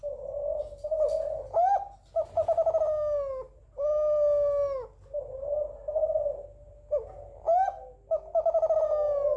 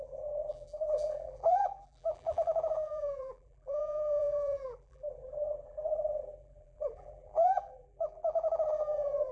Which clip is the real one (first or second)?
first